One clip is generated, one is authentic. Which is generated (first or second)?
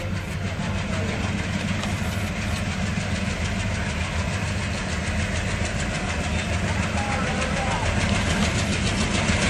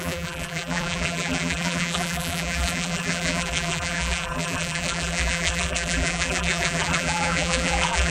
second